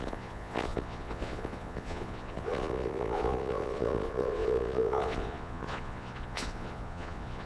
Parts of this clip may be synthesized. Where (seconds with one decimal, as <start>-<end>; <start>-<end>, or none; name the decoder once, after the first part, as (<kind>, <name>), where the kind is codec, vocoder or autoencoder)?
0.0-7.5 (vocoder, Vocos)